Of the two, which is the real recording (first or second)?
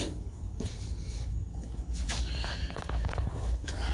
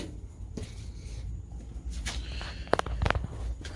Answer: second